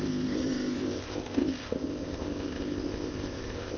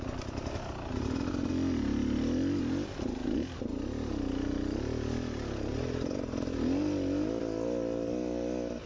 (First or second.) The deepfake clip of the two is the first